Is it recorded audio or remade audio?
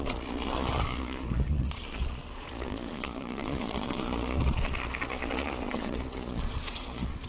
remade